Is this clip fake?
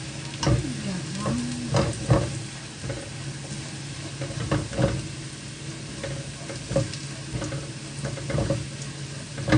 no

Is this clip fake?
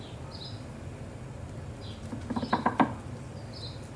no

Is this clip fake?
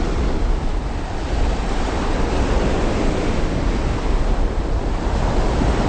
no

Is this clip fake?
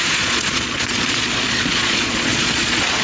yes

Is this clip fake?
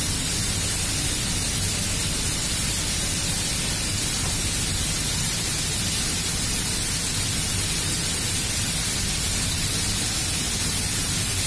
no